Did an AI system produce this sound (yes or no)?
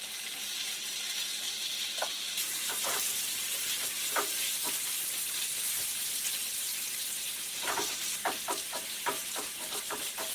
yes